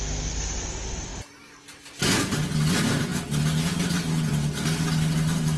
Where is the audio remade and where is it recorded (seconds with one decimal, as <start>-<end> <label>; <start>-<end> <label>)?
0.0-5.6 recorded